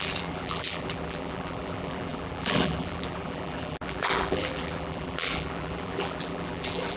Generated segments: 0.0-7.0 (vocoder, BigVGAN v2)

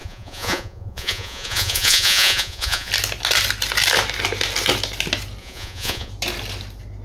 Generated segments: 0.0-2.9 (vocoder, Vocos); 5.4-6.1

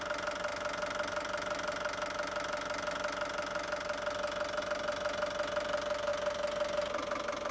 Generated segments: none

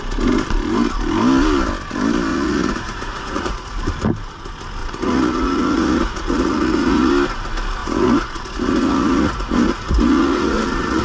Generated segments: 2.3-3.8 (vocoder, Vocos); 4.8-7.1; 7.8-11.0

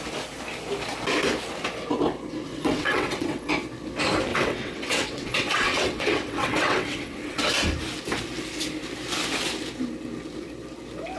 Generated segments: 2.5-3.5 (vocoder, WaveNeXt); 4.3-7.5

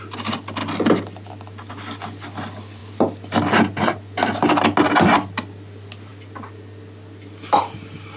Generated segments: none

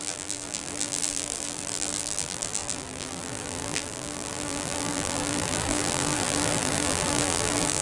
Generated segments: 0.0-7.8 (vocoder, BigVGAN v2)

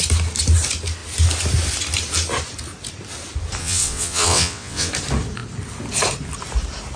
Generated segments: 3.6-4.9 (vocoder, WaveNeXt)